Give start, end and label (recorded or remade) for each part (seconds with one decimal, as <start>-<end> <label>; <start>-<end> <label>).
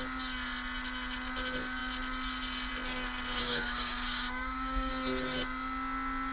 0.0-3.4 recorded; 3.4-4.9 remade; 4.9-6.3 recorded